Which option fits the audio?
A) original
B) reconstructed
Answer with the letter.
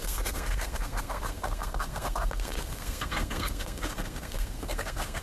B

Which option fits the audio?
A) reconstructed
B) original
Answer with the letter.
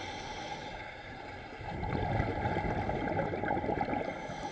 B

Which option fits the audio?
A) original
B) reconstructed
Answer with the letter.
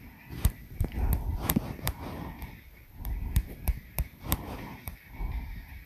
B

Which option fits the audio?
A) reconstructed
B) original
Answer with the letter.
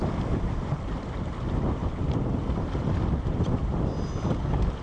A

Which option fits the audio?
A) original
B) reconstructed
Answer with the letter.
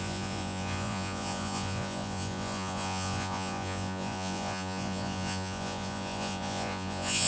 B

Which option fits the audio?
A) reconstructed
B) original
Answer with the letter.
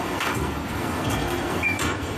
A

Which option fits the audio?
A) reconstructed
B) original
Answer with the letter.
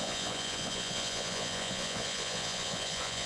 A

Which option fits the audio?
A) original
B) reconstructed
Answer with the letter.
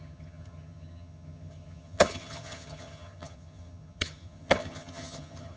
B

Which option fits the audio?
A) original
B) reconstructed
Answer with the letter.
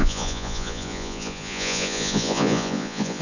B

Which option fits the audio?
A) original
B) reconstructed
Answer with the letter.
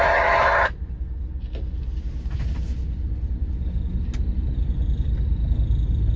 A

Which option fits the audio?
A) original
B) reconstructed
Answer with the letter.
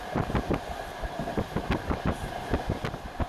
A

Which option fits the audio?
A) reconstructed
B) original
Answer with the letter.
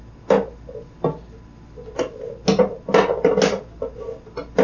B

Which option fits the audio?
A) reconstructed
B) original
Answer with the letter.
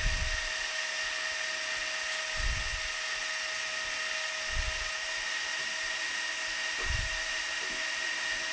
B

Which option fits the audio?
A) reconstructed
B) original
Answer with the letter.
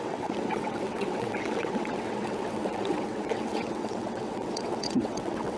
A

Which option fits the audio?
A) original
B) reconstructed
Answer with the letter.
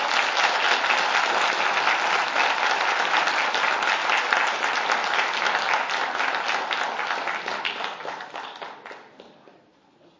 A